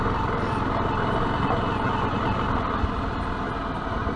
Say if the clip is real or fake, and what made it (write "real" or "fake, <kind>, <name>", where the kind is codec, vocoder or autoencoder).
real